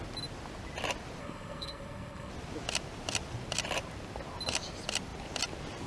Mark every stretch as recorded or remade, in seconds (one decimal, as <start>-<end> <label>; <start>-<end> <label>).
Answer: 0.0-1.2 recorded; 1.2-2.3 remade; 2.3-5.9 recorded